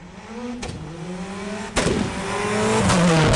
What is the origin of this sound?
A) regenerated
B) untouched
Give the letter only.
B